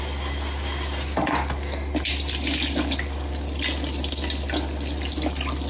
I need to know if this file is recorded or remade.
recorded